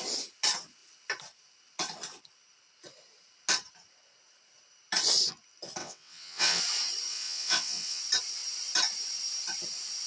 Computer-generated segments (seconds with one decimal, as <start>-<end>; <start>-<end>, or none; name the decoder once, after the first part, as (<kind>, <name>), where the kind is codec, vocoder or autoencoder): 5.8-6.6 (vocoder, WaveNeXt); 7.1-8.0